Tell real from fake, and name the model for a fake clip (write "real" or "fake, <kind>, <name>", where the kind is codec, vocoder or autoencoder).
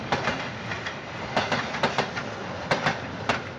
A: real